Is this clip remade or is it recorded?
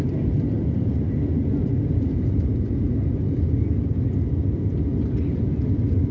recorded